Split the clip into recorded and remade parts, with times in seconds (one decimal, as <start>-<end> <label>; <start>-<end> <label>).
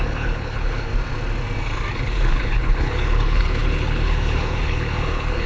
0.0-0.9 remade; 0.9-1.9 recorded; 1.9-5.5 remade